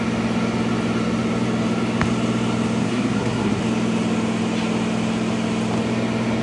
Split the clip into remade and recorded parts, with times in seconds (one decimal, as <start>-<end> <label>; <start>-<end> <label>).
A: 0.0-2.8 recorded; 2.8-3.6 remade; 3.6-6.4 recorded